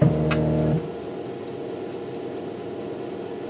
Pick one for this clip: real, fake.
real